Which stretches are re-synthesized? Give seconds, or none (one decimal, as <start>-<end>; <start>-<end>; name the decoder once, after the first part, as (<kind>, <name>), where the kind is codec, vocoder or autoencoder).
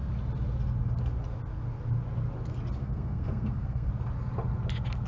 2.8-3.9 (codec, SNAC)